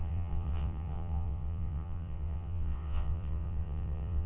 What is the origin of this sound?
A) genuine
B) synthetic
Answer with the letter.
B